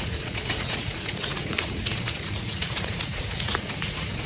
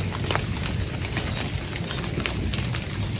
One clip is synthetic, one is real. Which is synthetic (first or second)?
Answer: first